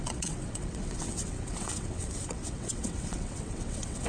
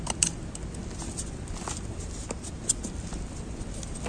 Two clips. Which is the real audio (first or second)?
second